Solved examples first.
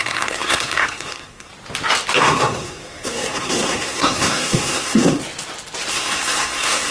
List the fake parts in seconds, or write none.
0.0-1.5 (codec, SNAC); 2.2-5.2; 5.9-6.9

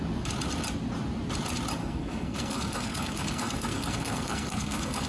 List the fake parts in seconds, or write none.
1.8-5.1 (codec, SNAC)

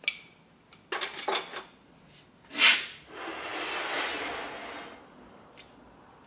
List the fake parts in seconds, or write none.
none

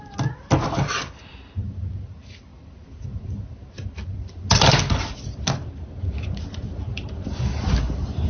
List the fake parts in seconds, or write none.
none

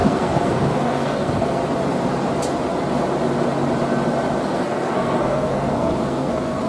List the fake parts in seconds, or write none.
0.0-1.6 (codec, SNAC); 4.4-6.7